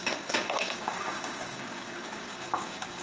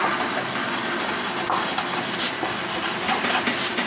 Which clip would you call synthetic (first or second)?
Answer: first